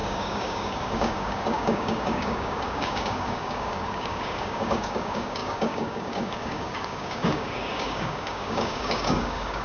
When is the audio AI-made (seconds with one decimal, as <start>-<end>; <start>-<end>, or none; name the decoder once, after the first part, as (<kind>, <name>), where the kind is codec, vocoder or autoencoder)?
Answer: 0.0-9.6 (codec, DAC)